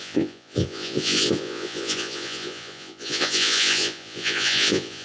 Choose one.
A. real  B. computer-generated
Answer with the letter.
B